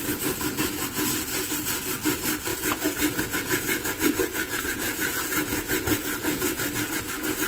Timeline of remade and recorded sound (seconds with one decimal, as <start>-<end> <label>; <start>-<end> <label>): 0.0-2.5 recorded; 2.5-7.0 remade; 7.0-7.5 recorded